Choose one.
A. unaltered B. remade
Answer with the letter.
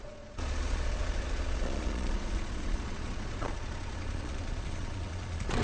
B